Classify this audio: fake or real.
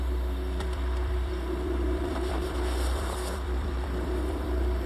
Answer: fake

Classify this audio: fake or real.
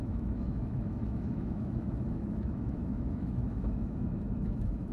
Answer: fake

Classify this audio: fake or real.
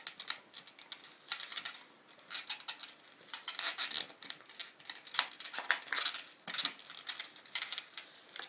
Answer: real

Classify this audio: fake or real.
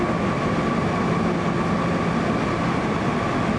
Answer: real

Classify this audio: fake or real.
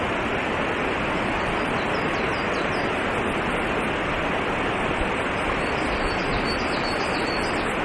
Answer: real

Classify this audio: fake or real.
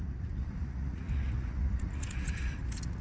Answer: fake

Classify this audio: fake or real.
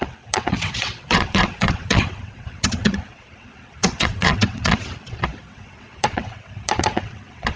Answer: fake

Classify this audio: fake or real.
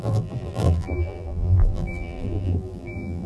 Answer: fake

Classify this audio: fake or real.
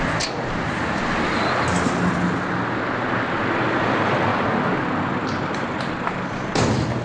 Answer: real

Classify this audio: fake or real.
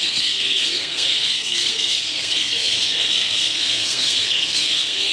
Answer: fake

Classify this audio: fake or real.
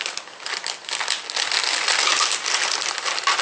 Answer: real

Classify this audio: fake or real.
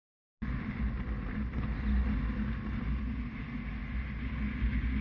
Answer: real